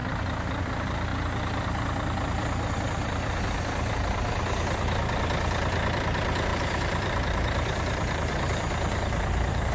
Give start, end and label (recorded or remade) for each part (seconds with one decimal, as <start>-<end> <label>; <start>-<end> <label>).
0.0-6.5 recorded; 6.5-9.7 remade